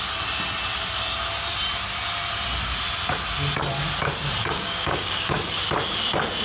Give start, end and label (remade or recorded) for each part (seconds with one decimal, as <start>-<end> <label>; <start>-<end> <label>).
0.0-4.4 recorded; 4.4-5.5 remade; 5.5-6.4 recorded